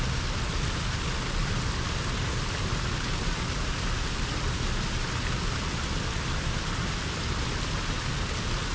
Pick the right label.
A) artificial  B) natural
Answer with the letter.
B